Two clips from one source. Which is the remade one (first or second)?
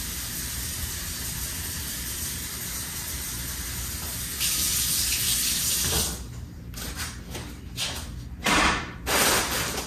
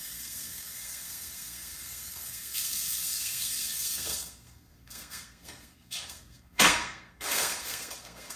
second